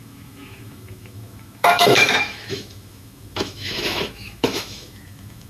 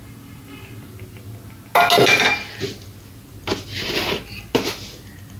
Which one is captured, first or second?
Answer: second